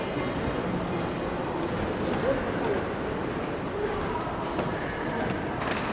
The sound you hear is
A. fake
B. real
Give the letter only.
B